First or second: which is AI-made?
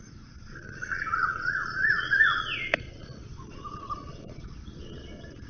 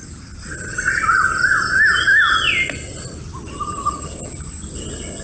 first